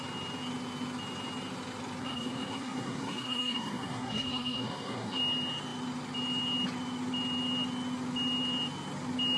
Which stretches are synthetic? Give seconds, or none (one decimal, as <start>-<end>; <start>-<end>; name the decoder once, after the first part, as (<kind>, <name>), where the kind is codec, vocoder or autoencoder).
2.0-5.2 (codec, SNAC)